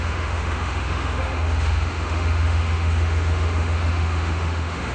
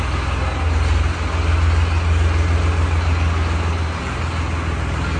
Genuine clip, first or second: second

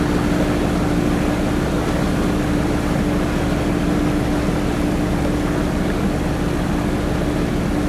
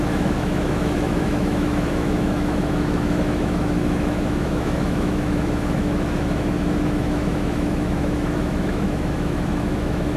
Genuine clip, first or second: first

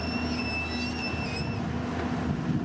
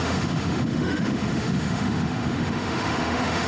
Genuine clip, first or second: first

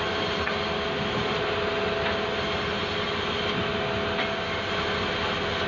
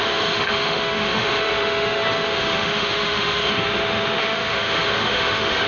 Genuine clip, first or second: first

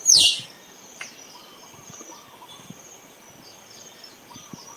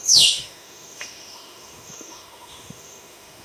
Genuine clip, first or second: first